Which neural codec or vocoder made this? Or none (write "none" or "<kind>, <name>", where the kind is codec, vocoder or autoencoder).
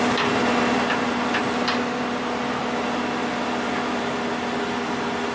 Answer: none